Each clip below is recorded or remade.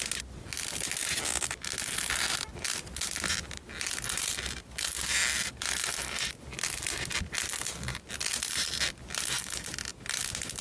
recorded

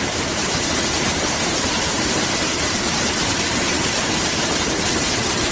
remade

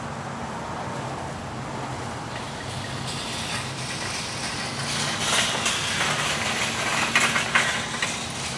recorded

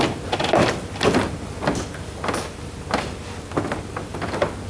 recorded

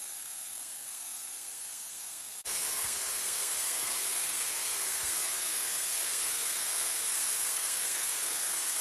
remade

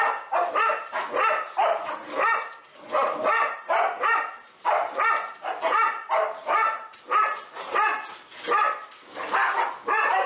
recorded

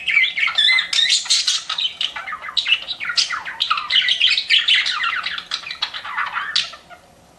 recorded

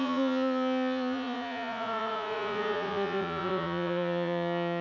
remade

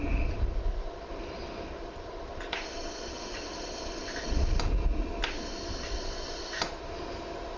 recorded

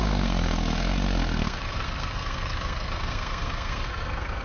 remade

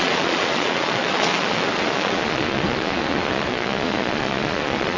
remade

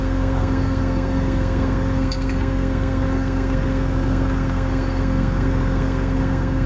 remade